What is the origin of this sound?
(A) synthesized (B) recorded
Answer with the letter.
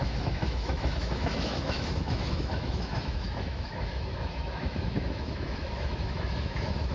A